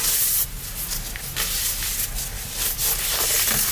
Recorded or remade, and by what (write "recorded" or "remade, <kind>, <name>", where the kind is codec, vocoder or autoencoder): recorded